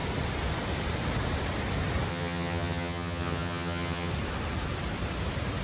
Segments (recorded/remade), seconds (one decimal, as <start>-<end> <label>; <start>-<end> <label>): 0.0-2.1 recorded; 2.1-4.1 remade; 4.1-5.6 recorded